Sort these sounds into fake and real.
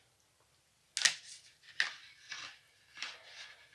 real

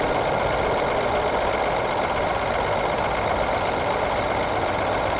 real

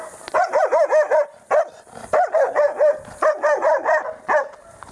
real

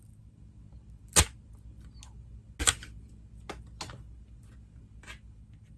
real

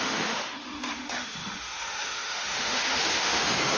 fake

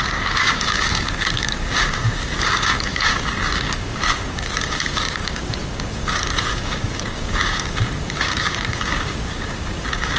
fake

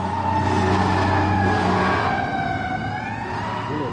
real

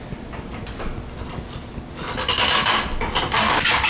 real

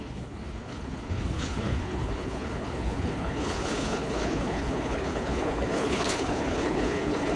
fake